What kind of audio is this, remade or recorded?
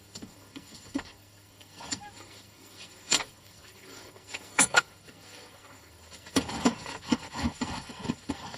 remade